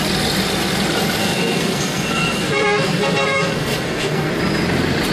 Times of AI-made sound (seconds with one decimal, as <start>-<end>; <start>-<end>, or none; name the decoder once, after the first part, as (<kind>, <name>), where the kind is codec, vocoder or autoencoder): 1.2-4.3 (codec, SNAC)